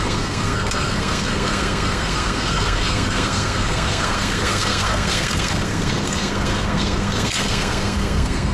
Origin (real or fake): fake